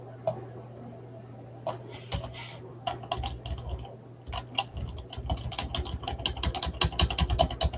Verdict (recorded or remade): recorded